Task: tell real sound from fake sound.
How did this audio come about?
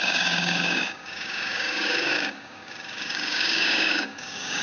fake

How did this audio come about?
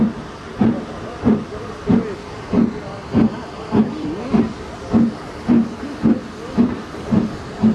real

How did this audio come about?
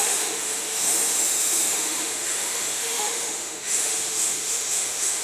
fake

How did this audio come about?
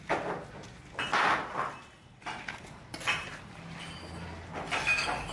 real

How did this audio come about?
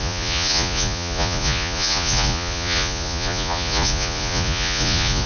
fake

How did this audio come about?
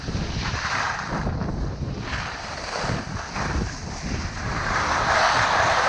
fake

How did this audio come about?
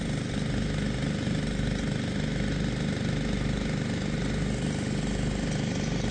real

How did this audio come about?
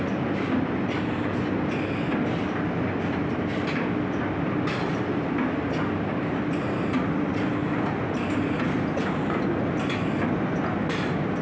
real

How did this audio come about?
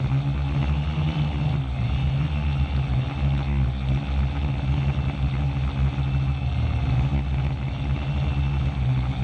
real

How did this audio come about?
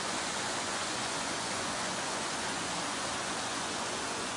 fake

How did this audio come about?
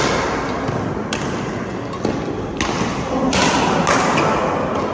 real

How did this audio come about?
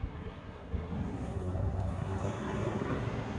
fake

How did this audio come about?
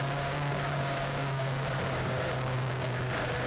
fake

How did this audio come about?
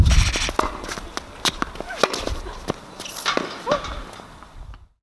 real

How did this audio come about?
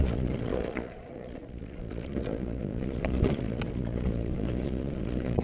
fake